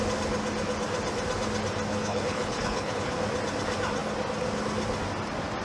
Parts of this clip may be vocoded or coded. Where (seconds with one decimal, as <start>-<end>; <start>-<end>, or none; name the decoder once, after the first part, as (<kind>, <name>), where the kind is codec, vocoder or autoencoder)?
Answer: 1.9-3.1 (codec, HILCodec)